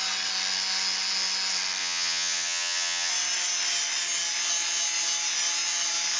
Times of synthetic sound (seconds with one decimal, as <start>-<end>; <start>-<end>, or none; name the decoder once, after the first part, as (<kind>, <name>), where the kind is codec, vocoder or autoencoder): 1.8-3.1 (vocoder, HiFi-GAN)